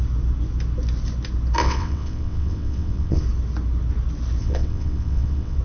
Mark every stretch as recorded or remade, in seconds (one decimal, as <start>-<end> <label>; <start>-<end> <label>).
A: 0.0-1.6 recorded; 1.6-3.2 remade; 3.2-4.4 recorded; 4.4-5.6 remade